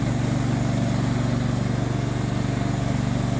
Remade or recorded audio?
recorded